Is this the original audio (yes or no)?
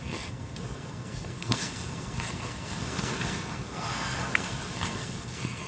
no